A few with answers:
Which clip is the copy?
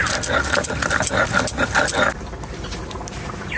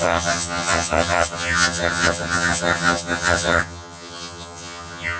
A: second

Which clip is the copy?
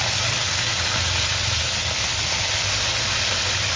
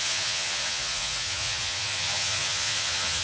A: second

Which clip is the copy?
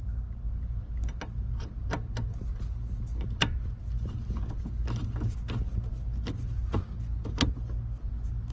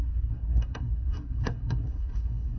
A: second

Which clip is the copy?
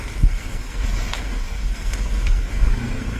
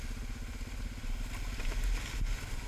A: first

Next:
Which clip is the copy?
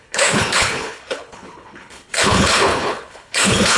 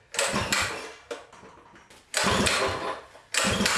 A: first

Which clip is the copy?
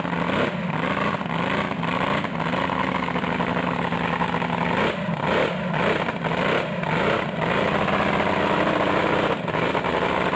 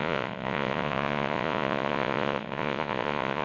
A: second